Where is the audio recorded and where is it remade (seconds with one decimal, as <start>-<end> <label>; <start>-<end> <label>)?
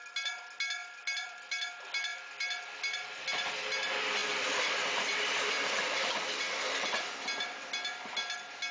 0.0-0.8 recorded; 0.8-1.7 remade; 1.7-2.1 recorded; 2.1-2.8 remade; 2.8-4.2 recorded; 4.2-6.9 remade; 6.9-8.7 recorded